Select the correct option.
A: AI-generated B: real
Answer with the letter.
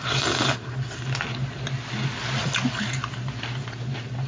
B